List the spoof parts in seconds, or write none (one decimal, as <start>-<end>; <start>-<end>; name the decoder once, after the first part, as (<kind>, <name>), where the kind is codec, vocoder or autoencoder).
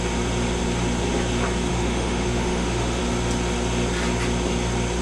1.7-3.0 (autoencoder, DAC-VAE)